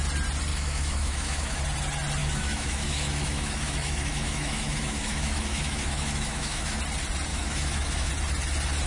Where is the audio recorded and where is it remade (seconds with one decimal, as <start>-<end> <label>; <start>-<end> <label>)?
0.0-0.5 recorded; 0.5-1.6 remade; 1.6-2.2 recorded; 2.2-6.8 remade; 6.8-7.3 recorded; 7.3-8.1 remade; 8.1-8.9 recorded